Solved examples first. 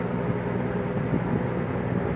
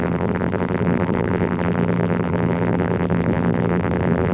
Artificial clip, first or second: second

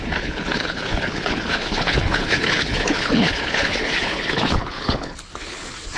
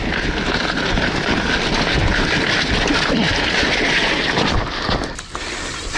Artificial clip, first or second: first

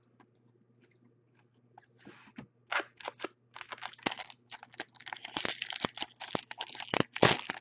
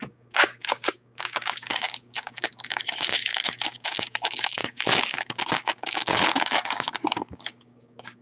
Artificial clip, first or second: second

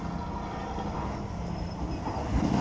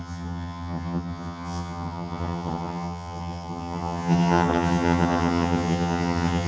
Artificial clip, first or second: second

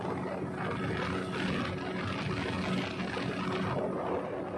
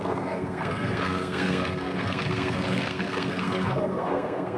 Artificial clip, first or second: second